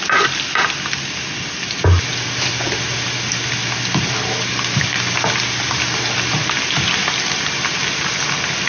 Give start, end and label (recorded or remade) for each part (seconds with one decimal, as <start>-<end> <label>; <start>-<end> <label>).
0.0-8.7 recorded